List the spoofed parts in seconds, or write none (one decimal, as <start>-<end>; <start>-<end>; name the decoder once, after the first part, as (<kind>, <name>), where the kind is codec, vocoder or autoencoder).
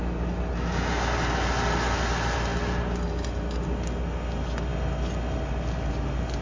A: none